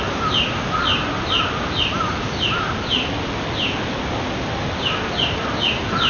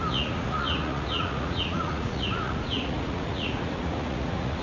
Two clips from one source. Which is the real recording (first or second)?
first